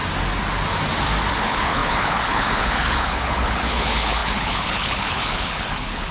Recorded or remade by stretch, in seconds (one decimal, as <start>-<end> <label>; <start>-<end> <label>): 0.0-1.3 recorded; 1.3-6.1 remade